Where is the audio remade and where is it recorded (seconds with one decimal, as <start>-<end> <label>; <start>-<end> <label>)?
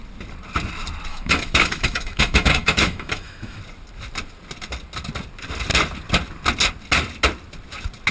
0.0-1.1 recorded; 1.1-3.6 remade; 3.6-8.1 recorded